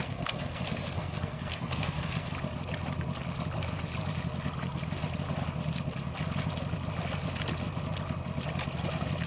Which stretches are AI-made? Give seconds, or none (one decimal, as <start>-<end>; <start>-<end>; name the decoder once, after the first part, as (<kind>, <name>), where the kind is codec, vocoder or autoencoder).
0.0-2.3 (codec, SNAC)